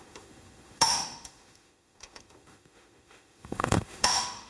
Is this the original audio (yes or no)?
no